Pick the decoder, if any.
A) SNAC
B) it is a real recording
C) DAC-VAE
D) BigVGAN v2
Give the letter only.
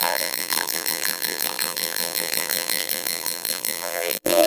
D